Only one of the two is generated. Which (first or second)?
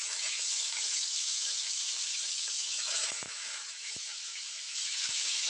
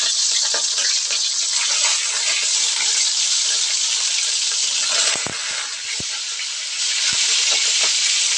first